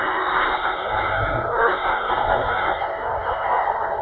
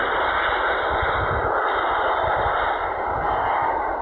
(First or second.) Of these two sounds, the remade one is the first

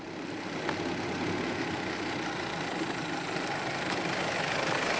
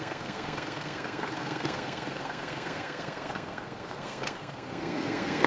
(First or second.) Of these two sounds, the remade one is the second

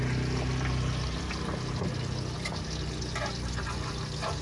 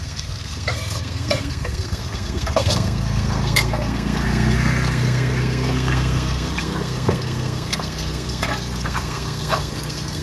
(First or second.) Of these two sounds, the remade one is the second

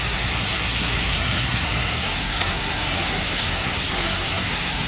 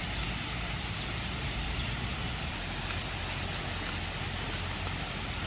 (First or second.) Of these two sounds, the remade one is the first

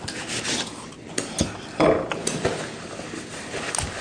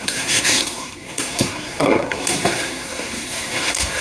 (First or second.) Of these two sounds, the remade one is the second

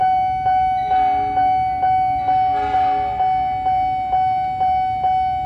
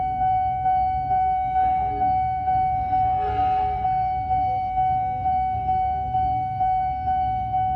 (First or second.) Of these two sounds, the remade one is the second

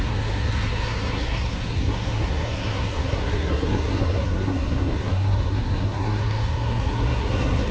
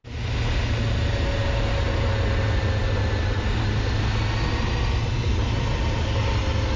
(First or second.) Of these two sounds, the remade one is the first